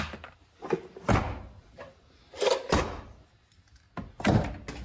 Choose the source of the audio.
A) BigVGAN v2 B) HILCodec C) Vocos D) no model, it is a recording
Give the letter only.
D